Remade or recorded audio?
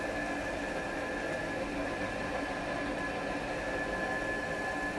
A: recorded